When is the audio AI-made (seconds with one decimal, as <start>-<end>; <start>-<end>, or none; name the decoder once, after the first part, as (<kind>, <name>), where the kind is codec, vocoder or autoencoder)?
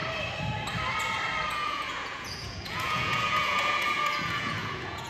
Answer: 1.5-5.1 (vocoder, Vocos)